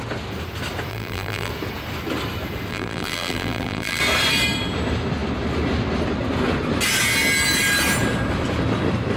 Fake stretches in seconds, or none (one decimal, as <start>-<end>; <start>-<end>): 0.9-1.5; 2.7-4.0